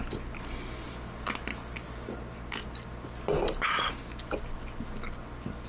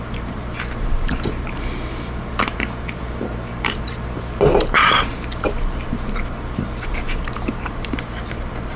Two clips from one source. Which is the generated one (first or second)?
second